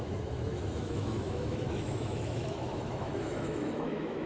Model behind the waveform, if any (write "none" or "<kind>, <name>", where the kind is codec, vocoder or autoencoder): autoencoder, DAC-VAE